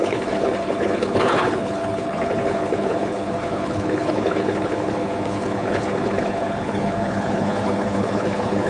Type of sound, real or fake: fake